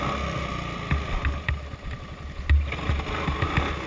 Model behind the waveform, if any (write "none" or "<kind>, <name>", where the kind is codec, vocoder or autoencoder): none